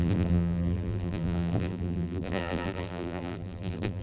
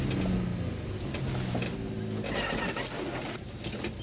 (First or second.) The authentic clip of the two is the second